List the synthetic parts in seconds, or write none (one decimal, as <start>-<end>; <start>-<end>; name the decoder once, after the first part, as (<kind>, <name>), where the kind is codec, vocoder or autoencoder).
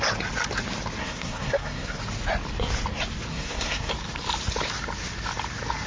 1.0-2.0 (codec, SNAC); 3.3-3.9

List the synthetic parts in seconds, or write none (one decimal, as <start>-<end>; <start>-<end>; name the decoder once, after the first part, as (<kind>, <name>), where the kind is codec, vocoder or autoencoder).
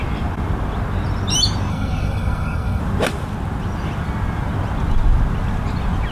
1.7-2.8 (codec, SNAC)